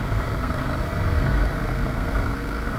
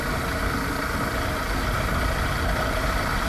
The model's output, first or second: first